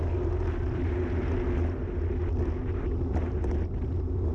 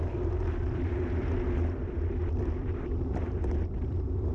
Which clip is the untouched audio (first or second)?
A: first